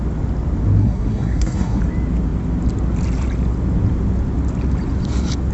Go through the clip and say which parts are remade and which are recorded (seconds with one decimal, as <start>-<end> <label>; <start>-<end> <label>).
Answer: 0.0-0.8 recorded; 0.8-1.8 remade; 1.8-5.5 recorded